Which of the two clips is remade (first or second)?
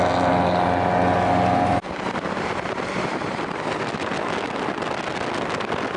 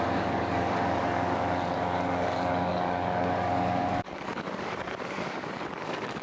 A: second